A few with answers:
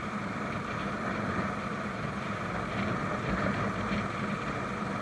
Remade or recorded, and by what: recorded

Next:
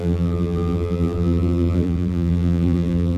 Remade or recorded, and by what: remade, vocoder, BigVGAN v2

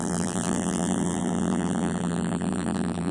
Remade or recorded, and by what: remade, vocoder, BigVGAN v2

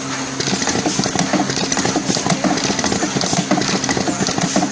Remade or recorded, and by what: recorded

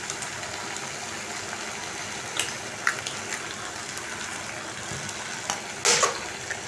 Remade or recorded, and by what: recorded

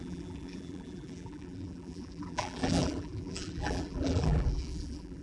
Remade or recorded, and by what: remade, vocoder, BigVGAN v2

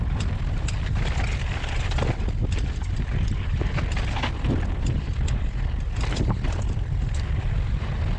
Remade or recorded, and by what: recorded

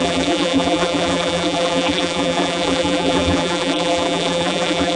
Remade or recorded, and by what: remade, vocoder, BigVGAN v2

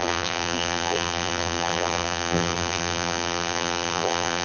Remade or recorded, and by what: remade, vocoder, BigVGAN v2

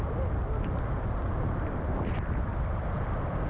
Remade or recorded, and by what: remade, vocoder, BigVGAN v2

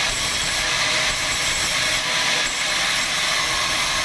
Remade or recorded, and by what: remade, vocoder, BigVGAN v2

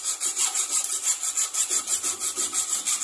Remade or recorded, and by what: recorded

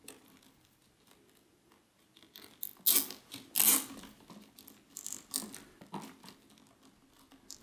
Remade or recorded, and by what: recorded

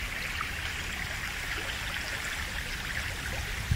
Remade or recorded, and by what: recorded